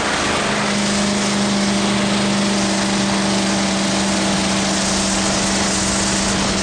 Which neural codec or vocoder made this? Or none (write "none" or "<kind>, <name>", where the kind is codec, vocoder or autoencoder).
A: none